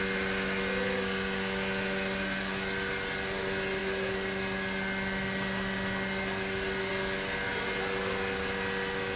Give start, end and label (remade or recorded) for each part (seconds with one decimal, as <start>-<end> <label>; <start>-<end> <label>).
0.0-9.2 recorded